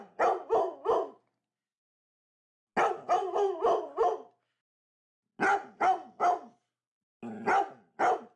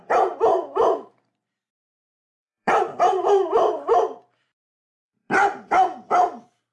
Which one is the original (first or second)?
first